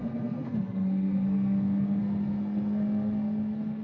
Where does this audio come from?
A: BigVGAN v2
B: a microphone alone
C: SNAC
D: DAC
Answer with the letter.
C